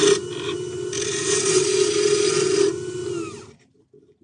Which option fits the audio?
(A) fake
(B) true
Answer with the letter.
B